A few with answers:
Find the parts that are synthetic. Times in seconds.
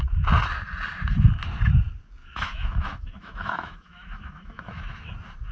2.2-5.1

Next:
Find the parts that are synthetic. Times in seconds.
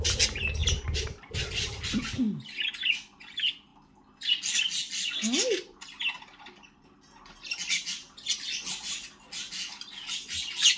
none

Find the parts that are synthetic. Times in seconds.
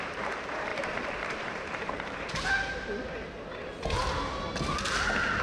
0.7-2.3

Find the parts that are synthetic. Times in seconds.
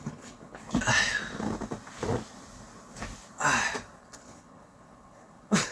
0.0-0.6; 4.0-5.7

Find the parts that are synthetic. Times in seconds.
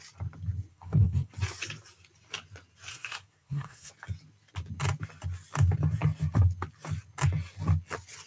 0.7-1.3; 2.9-3.9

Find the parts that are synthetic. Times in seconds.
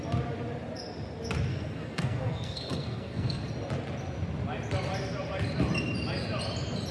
1.5-3.5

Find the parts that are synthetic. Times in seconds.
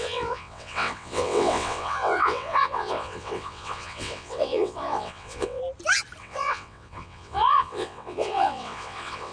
0.0-5.6; 6.2-9.3